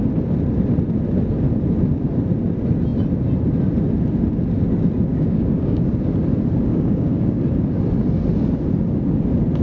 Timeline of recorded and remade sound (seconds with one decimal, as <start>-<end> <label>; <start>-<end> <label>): 0.0-5.1 recorded; 5.1-5.8 remade; 5.8-6.7 recorded; 6.7-7.4 remade; 7.4-9.6 recorded